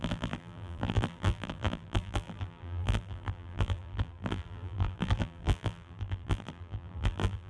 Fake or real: fake